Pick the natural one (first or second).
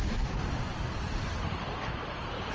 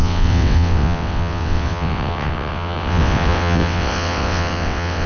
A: first